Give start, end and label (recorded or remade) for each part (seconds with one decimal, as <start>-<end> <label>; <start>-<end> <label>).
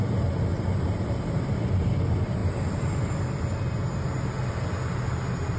0.0-0.5 recorded; 0.5-1.6 remade; 1.6-5.6 recorded